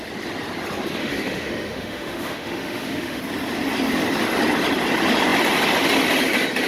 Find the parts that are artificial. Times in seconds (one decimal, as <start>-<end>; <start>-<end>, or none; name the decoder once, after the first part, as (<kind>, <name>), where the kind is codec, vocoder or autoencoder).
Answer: 1.0-3.2 (autoencoder, DAC-VAE)